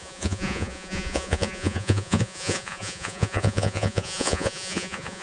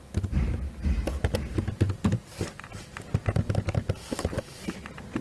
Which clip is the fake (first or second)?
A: first